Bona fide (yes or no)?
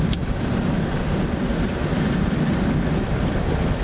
yes